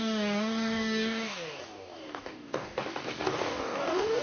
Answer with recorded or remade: remade